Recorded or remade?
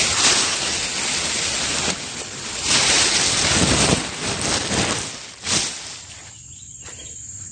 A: recorded